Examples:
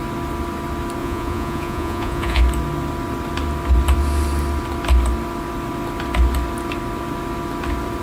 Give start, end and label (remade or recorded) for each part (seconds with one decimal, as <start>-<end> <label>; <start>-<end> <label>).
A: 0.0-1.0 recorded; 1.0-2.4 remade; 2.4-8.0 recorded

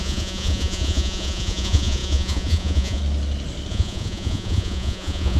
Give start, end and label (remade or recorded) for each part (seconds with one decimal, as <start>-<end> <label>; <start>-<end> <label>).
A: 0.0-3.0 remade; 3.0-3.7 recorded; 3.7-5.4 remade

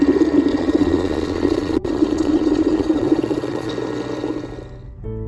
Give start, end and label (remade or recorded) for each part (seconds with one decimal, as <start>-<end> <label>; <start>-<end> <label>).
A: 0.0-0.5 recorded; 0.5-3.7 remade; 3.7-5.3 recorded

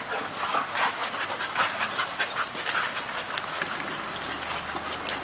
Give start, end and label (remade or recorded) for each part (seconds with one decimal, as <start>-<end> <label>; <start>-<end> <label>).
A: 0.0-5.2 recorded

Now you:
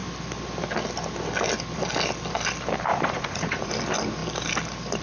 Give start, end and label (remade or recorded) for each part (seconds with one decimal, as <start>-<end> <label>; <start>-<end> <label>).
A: 0.0-2.9 recorded; 2.9-3.7 remade; 3.7-5.0 recorded